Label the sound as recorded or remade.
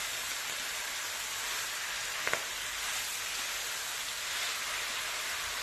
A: recorded